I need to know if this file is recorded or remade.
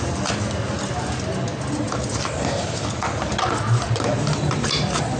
recorded